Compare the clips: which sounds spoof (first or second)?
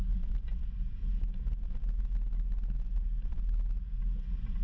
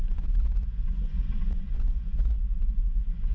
second